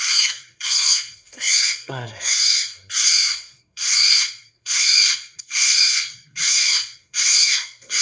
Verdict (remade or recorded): remade